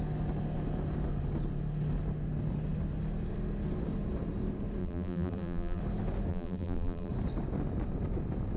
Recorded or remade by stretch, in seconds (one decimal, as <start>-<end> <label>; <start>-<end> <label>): 0.0-4.8 recorded; 4.8-5.8 remade; 5.8-6.3 recorded; 6.3-7.1 remade; 7.1-8.6 recorded